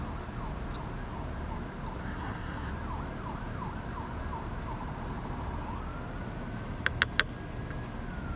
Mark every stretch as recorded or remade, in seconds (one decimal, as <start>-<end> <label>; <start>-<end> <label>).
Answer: 0.0-2.0 recorded; 2.0-2.7 remade; 2.7-8.3 recorded